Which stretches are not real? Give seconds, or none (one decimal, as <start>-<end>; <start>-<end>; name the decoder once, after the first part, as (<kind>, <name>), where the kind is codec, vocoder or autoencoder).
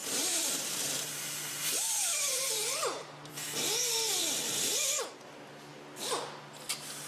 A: 0.0-3.3 (vocoder, BigVGAN v2)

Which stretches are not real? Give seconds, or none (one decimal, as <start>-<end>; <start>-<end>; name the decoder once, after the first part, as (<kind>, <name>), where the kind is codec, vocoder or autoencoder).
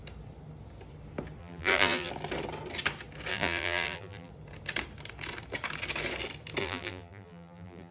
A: 1.4-2.1 (vocoder, BigVGAN v2); 3.3-4.3; 6.6-7.9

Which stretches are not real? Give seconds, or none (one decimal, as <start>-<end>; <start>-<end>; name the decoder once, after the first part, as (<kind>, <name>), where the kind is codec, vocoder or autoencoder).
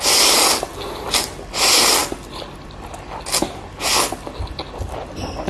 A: none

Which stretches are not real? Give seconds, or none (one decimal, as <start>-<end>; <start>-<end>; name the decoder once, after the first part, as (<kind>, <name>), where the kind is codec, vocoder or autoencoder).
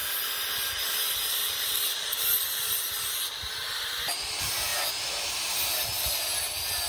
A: none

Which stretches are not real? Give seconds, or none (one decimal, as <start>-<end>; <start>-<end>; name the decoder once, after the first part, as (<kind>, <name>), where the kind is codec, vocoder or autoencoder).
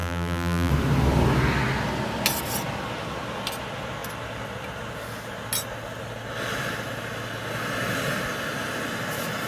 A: 0.0-0.7 (vocoder, BigVGAN v2)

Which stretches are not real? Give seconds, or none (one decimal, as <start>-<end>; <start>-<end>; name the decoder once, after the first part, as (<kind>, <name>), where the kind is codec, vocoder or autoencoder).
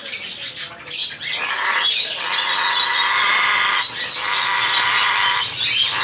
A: none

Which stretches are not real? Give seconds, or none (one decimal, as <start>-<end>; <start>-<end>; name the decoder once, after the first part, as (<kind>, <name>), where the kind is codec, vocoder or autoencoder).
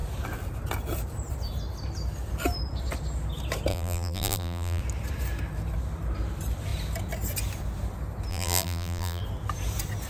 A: 3.7-4.8 (vocoder, BigVGAN v2); 8.3-9.2